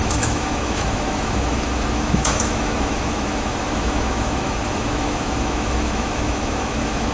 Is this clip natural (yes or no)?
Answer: no